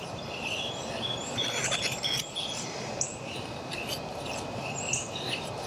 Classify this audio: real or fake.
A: fake